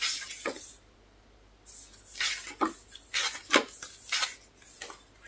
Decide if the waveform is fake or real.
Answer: real